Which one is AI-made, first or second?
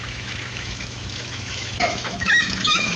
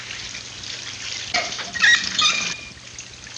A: first